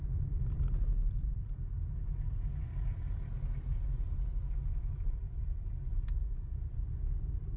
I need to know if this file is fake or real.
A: real